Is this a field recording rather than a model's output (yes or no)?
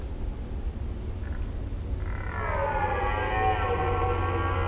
yes